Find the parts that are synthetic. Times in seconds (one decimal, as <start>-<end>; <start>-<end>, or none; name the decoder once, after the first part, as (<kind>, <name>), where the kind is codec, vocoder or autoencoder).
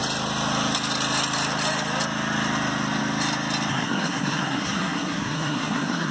3.7-6.1 (codec, SNAC)